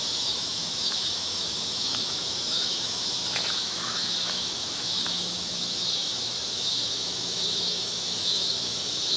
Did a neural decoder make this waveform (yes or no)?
yes